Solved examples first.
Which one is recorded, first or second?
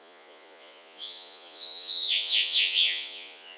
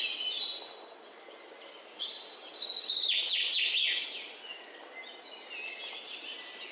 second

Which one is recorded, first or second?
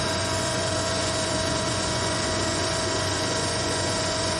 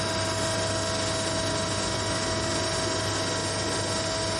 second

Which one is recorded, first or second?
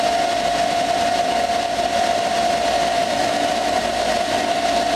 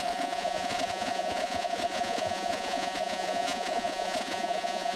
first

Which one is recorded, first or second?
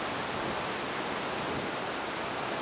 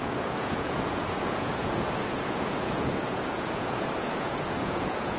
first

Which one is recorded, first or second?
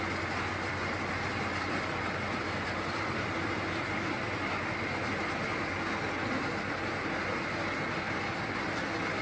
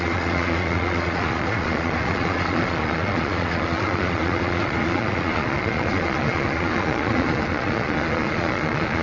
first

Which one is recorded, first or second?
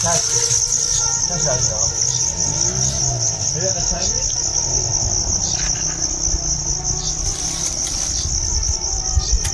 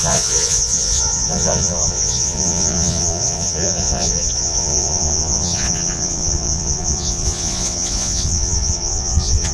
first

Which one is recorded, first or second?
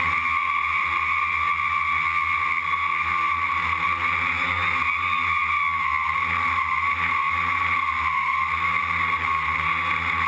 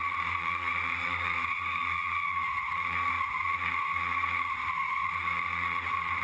first